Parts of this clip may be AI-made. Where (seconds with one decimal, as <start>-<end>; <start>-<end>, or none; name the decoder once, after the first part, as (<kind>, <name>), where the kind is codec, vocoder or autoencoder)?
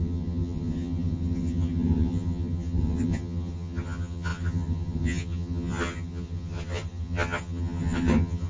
0.0-8.5 (vocoder, HiFi-GAN)